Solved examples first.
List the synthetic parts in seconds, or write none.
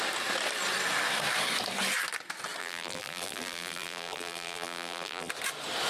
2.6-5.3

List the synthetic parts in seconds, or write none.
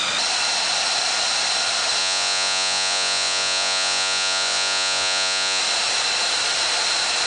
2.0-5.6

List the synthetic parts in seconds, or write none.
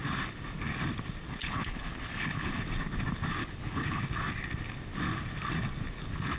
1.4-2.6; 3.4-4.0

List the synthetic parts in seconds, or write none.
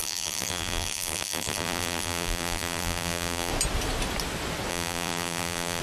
0.0-3.5; 4.7-5.8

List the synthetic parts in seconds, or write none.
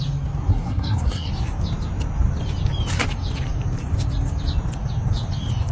0.5-1.3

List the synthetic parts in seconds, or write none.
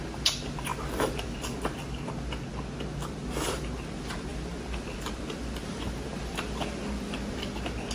none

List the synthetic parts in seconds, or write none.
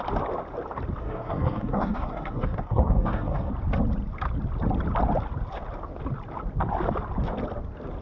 1.0-3.5